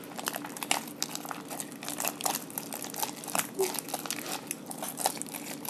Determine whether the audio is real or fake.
real